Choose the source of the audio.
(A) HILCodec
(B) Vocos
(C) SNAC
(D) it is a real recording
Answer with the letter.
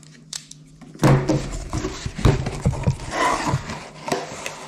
D